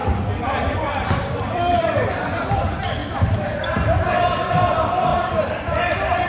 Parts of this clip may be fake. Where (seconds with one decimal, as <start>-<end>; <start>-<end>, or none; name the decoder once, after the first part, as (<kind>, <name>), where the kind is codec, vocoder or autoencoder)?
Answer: 1.4-6.3 (vocoder, BigVGAN v2)